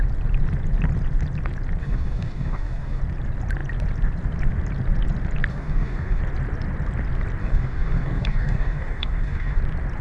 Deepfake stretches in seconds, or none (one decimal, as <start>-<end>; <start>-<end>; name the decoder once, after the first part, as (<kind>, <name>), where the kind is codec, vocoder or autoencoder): 1.8-3.0 (codec, DAC); 5.5-6.2; 7.4-9.6